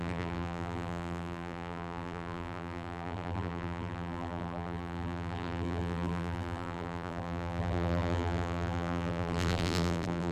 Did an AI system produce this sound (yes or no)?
yes